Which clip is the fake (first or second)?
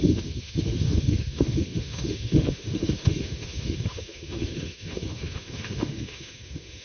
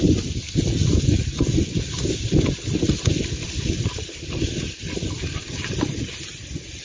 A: first